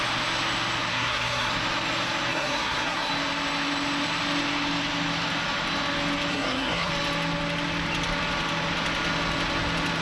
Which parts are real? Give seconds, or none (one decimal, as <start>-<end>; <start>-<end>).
0.0-0.9; 1.5-2.3; 3.1-6.3; 6.9-10.0